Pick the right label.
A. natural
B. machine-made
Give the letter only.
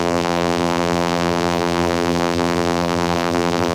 B